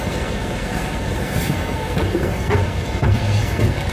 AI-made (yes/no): yes